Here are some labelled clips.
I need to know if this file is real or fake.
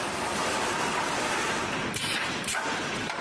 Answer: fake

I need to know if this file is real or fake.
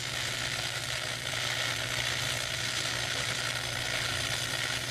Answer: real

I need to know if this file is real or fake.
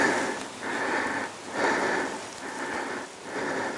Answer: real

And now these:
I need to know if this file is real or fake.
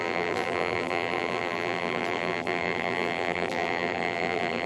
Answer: fake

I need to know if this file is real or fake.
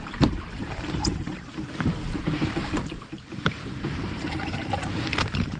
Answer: fake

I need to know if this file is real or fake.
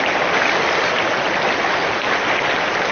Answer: real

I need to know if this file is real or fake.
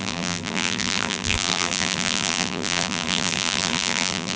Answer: fake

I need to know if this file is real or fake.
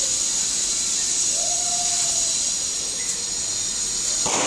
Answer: fake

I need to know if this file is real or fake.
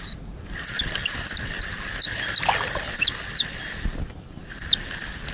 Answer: real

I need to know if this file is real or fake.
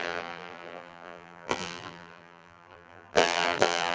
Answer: fake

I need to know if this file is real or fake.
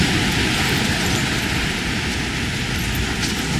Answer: real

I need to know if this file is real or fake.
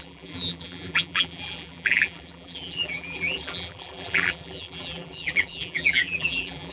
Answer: fake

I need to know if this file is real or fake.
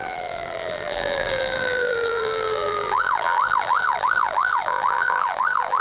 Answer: fake